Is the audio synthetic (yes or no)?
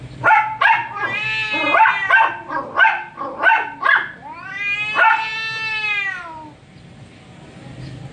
no